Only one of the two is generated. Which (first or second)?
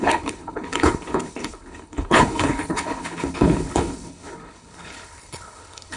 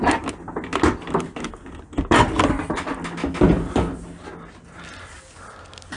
first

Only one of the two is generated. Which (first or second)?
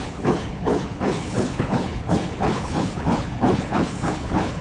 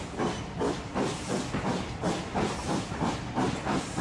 first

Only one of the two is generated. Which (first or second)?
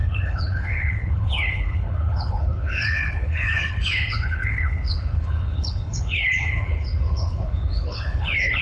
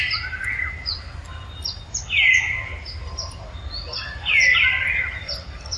first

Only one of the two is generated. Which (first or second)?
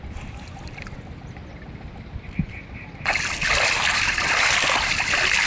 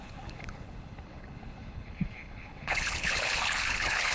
second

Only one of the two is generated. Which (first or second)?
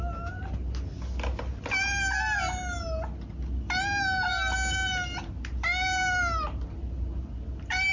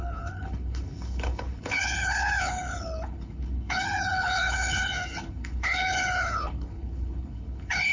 second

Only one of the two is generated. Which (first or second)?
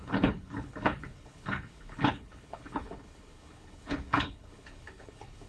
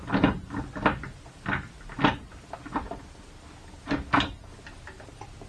first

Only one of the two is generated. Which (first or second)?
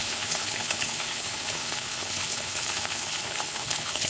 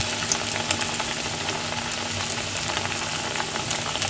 first